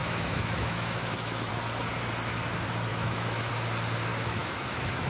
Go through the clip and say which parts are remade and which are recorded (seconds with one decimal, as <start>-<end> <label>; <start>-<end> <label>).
0.0-1.5 remade; 1.5-2.9 recorded; 2.9-3.5 remade; 3.5-4.1 recorded; 4.1-5.1 remade